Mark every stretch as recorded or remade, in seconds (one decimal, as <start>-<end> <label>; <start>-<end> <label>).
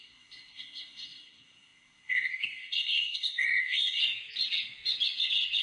0.0-4.0 remade; 4.0-5.6 recorded